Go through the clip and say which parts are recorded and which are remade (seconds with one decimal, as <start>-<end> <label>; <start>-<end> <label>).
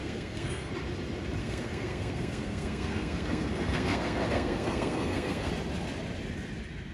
0.0-0.7 remade; 0.7-1.4 recorded; 1.4-5.5 remade; 5.5-6.9 recorded